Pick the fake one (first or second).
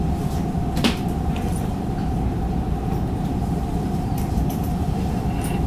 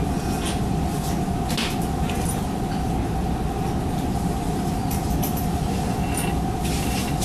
first